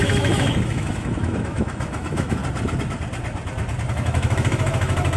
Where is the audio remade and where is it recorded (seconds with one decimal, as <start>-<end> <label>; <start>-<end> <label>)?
0.0-2.4 remade; 2.4-3.9 recorded; 3.9-5.2 remade